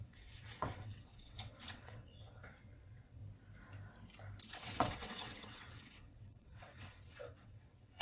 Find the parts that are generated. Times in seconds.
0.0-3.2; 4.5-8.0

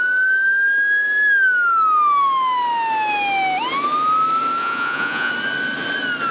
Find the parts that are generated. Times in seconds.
4.6-5.3

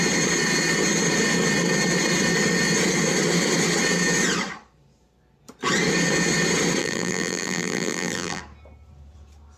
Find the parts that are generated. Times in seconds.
6.8-8.4

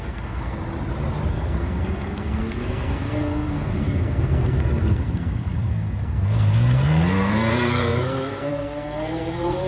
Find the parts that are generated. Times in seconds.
0.0-0.6; 1.3-9.7

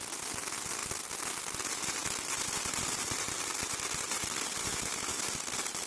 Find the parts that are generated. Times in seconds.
4.7-5.3

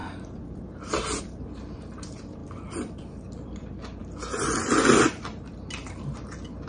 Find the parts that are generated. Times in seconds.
none

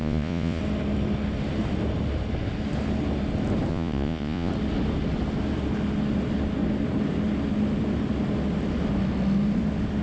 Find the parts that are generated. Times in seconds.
0.0-0.6; 3.7-4.5